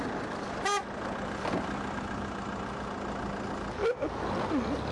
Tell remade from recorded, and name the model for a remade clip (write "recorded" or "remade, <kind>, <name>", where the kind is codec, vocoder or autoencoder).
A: recorded